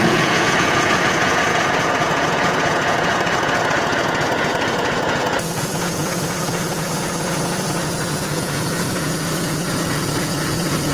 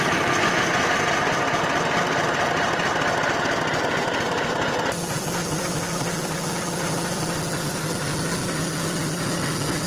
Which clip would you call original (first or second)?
second